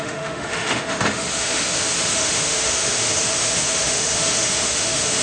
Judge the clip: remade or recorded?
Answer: remade